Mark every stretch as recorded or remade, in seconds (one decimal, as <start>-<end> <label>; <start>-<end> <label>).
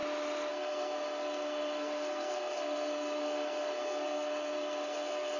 0.0-0.5 recorded; 0.5-5.4 remade